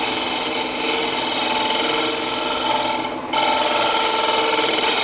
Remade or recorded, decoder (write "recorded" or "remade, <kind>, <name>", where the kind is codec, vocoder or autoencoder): recorded